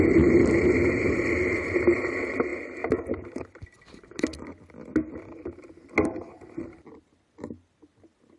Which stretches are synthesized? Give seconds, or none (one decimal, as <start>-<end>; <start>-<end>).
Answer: none